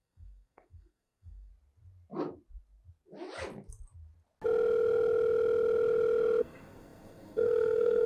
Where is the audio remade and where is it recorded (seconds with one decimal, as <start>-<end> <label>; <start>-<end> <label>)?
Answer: 0.0-1.5 remade; 1.5-6.4 recorded; 6.4-8.1 remade